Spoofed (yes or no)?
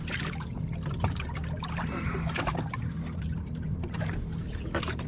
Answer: yes